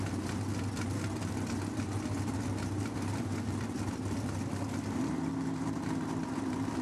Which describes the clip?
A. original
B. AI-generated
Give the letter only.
A